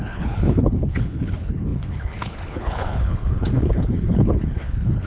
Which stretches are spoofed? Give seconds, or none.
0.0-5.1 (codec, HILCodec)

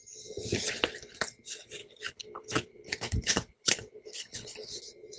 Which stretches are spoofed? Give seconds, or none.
1.8-4.8 (codec, HILCodec)

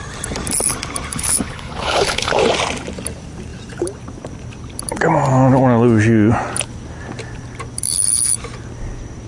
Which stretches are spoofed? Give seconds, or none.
1.1-2.4 (codec, HILCodec)

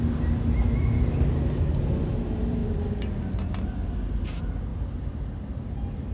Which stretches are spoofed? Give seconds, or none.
none